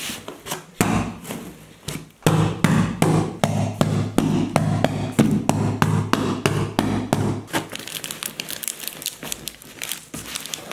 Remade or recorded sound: recorded